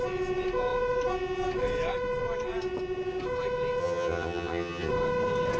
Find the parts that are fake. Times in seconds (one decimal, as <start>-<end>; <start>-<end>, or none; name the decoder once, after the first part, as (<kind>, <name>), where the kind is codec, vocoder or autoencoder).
3.8-4.9 (vocoder, HiFi-GAN)